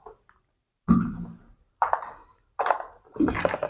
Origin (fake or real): fake